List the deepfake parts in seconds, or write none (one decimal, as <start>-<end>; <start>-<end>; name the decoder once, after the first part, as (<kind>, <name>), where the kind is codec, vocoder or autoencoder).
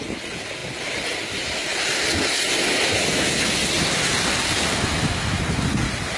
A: none